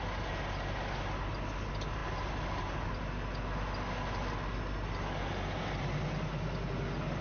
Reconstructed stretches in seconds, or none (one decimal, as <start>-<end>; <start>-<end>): none